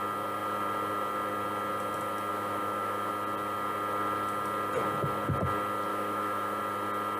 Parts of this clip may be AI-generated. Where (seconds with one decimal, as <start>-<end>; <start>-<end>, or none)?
2.3-3.1; 5.9-6.6

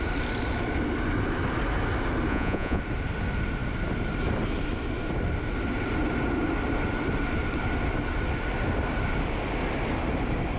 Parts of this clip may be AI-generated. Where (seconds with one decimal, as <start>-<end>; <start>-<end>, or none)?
2.3-2.8

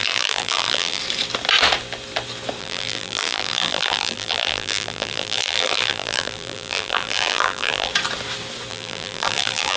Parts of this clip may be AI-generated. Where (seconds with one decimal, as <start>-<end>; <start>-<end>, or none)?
0.0-1.0; 2.6-7.9; 8.7-9.8

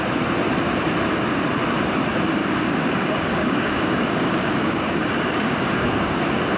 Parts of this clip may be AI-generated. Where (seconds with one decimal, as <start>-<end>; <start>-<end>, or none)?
2.4-6.6

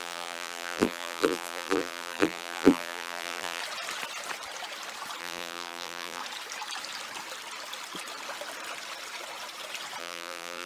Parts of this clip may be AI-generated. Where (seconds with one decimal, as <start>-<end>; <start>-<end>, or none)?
0.0-3.6; 5.2-6.2; 10.0-10.7